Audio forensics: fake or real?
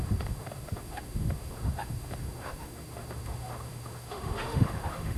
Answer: fake